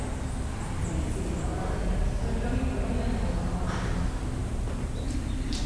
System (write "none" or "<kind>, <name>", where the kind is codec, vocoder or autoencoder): none